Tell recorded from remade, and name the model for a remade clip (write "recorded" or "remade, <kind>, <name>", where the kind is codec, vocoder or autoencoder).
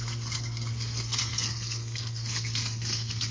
remade, codec, SNAC